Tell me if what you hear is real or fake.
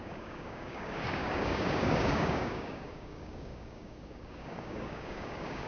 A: fake